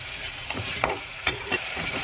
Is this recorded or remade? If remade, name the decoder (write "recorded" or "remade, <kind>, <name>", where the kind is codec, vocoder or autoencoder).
remade, vocoder, Vocos